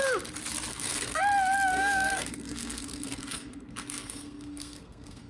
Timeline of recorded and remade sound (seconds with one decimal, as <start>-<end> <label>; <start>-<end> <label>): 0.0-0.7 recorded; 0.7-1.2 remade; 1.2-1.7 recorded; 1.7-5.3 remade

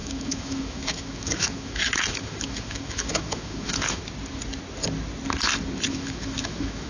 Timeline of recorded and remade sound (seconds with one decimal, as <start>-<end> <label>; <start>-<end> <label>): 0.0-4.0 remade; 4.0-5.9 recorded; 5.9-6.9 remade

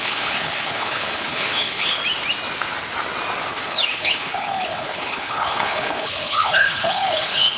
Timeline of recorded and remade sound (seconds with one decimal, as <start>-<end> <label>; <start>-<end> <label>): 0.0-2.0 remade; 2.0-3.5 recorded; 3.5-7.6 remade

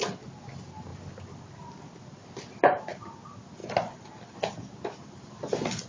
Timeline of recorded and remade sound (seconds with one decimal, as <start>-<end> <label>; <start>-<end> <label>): 0.0-0.9 recorded; 0.9-2.4 remade; 2.4-3.6 recorded; 3.6-4.1 remade; 4.1-5.9 recorded

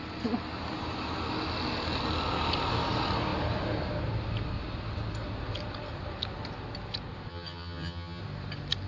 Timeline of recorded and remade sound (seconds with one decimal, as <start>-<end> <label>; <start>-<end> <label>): 0.0-7.3 recorded; 7.3-8.2 remade; 8.2-8.9 recorded

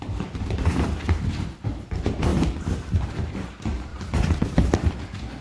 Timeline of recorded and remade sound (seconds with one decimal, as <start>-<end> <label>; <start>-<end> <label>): 0.0-2.3 remade; 2.3-3.5 recorded; 3.5-5.4 remade

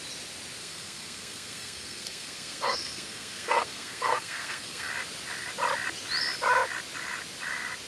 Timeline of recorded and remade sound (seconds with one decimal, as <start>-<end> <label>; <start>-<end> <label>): 0.0-0.6 recorded; 0.6-4.9 remade; 4.9-7.9 recorded